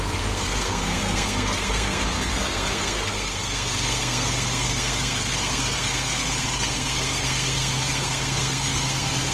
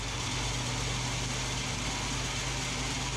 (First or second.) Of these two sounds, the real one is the second